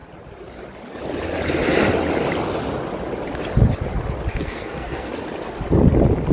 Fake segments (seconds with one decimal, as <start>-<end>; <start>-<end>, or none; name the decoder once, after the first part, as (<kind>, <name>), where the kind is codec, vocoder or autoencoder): 4.3-5.1 (codec, SNAC)